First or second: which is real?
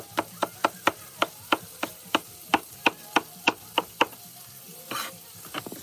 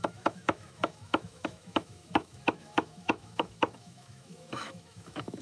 first